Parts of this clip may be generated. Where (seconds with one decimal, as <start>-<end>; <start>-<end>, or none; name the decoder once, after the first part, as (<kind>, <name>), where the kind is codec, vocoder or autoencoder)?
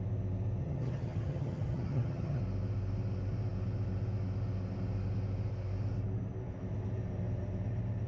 0.6-2.4 (vocoder, HiFi-GAN)